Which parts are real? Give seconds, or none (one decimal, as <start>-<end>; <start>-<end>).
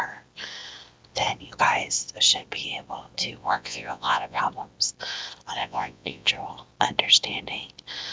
0.0-3.4; 4.4-5.6; 6.3-8.1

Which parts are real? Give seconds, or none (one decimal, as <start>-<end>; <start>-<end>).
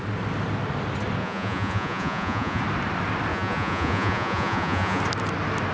0.0-1.2; 2.6-3.3; 5.0-5.7